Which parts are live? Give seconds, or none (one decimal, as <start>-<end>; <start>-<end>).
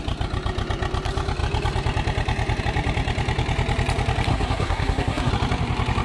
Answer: 0.0-4.3; 5.3-6.0